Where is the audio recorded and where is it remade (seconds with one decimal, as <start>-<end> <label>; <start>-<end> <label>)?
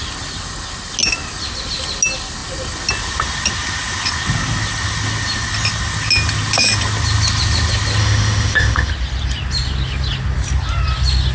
0.0-8.0 recorded; 8.0-8.9 remade; 8.9-11.3 recorded